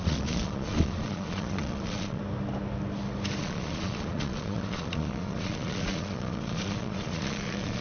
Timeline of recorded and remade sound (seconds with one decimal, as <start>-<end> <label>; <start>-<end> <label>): 0.0-2.2 remade; 2.2-3.4 recorded; 3.4-7.8 remade